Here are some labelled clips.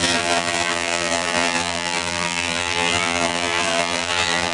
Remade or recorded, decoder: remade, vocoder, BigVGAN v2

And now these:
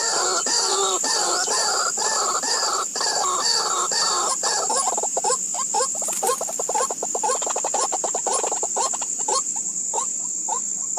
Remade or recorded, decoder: remade, vocoder, BigVGAN v2